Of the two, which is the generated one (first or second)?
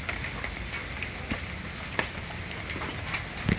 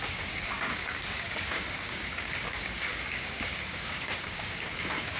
second